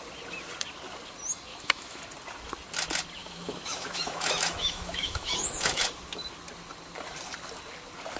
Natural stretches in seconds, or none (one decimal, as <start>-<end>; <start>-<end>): 0.0-1.5; 2.0-3.2; 5.8-8.2